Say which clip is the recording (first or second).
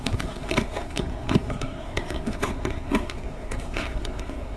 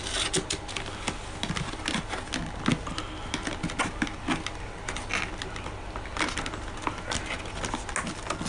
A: second